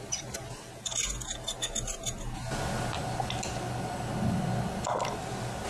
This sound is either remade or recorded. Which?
recorded